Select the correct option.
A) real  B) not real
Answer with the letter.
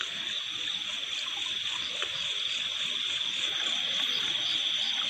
A